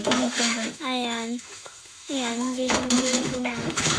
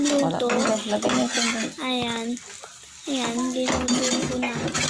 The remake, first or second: first